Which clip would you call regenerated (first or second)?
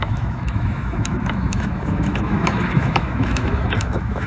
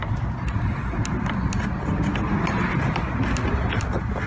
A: first